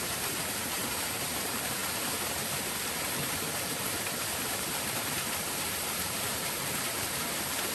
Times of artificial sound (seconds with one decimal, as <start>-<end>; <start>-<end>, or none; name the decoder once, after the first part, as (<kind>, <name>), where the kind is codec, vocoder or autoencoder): 0.0-1.8 (vocoder, BigVGAN v2); 3.5-7.7